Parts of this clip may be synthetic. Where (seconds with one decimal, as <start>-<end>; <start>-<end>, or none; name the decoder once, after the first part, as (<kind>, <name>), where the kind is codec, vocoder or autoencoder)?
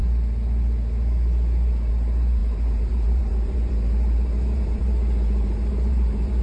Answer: 2.4-6.4 (vocoder, BigVGAN v2)